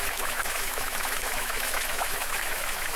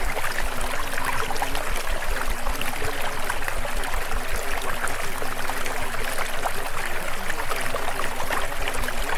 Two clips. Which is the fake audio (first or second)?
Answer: first